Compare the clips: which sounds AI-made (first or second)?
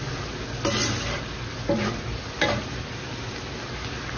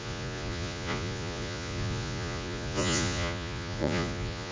second